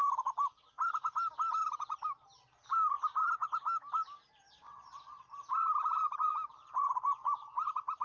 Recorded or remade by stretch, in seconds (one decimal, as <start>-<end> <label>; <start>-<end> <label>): 0.0-8.0 recorded